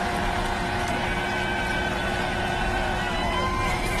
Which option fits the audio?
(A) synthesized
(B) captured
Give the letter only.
B